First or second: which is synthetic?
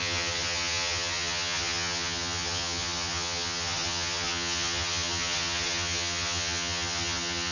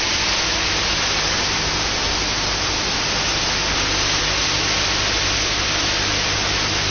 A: first